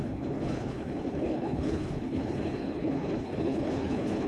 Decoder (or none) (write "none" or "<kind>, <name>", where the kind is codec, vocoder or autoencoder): codec, HILCodec